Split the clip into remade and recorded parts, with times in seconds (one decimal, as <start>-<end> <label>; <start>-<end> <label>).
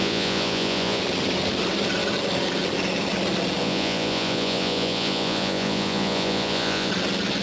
0.0-1.0 remade; 1.0-3.6 recorded; 3.6-6.9 remade; 6.9-7.4 recorded